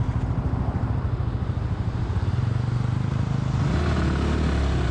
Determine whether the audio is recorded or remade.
recorded